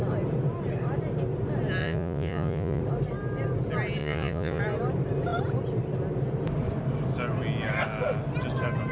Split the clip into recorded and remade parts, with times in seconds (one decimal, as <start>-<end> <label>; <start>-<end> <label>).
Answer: 0.0-1.8 recorded; 1.8-2.8 remade; 2.8-4.0 recorded; 4.0-4.6 remade; 4.6-8.9 recorded